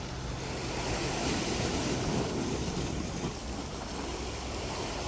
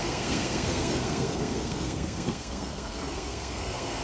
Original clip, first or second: first